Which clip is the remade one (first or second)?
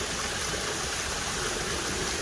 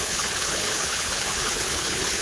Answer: second